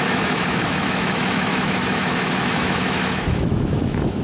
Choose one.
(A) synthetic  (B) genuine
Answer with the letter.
A